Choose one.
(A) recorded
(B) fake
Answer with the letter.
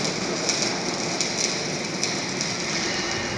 A